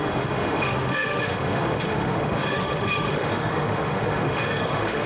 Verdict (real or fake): fake